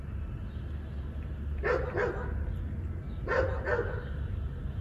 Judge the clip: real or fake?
real